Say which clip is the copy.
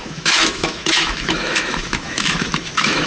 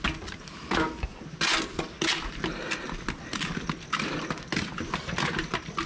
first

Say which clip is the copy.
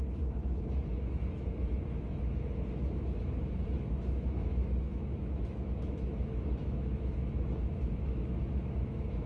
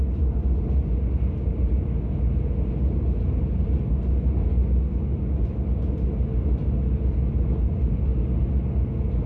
first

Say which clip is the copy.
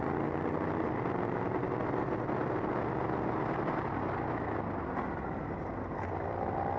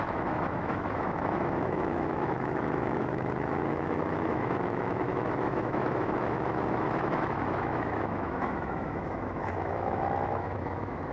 second